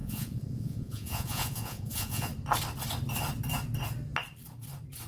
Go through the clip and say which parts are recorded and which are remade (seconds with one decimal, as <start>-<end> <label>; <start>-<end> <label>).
0.0-2.3 remade; 2.3-5.1 recorded